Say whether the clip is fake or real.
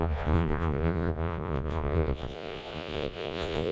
fake